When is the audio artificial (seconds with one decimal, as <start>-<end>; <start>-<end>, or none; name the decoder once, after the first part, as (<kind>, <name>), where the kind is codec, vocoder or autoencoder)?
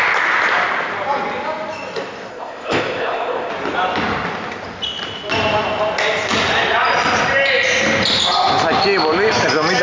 2.3-3.5 (codec, ZipCodec)